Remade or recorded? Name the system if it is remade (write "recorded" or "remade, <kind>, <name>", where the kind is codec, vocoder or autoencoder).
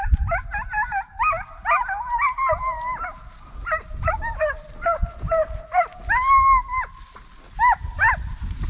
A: recorded